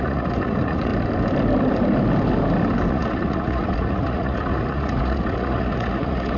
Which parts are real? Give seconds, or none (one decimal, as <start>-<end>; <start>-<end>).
0.9-2.9